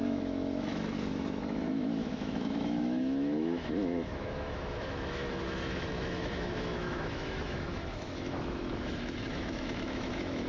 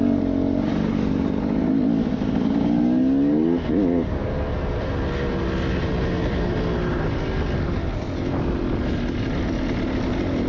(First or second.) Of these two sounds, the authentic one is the second